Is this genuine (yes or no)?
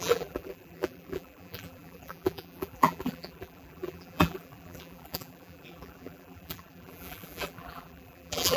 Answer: no